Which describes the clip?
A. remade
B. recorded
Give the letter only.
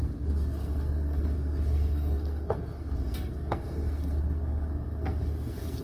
A